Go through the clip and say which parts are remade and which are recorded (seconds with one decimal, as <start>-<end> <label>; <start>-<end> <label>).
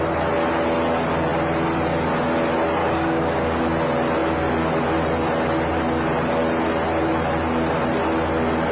0.0-2.8 recorded; 2.8-3.6 remade; 3.6-8.7 recorded